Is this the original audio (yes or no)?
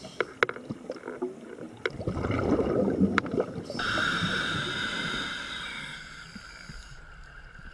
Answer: yes